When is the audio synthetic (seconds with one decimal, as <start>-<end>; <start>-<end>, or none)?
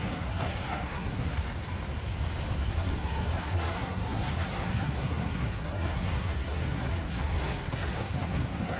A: 0.0-1.4; 2.6-8.8